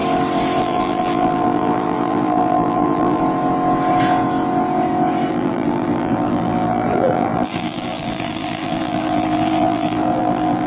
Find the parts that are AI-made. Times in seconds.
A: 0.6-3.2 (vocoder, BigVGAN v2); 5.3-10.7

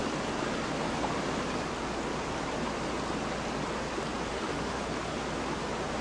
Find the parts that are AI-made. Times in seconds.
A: 4.3-4.8 (autoencoder, DAC-VAE)